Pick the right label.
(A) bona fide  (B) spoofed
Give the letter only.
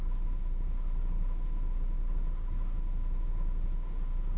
B